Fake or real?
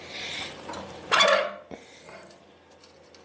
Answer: real